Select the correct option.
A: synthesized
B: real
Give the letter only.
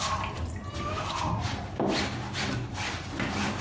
B